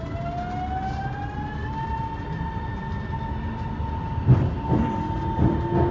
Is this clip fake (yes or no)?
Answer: no